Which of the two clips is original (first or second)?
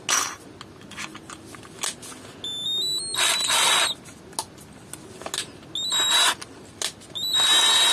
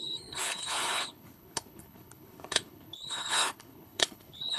first